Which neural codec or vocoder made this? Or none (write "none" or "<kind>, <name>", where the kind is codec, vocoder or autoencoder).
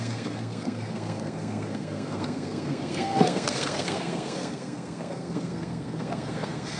codec, SNAC